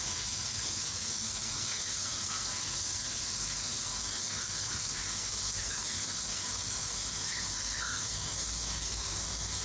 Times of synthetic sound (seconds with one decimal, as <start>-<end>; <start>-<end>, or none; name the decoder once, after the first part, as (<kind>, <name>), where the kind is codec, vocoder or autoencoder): 0.0-9.6 (codec, SNAC)